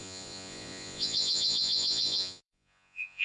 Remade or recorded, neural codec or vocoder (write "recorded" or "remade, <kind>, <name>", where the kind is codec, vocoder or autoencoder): remade, vocoder, Vocos